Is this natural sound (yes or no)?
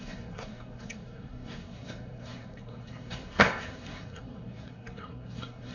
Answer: no